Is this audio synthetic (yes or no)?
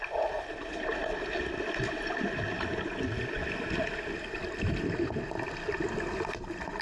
no